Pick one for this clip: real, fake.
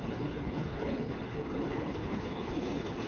fake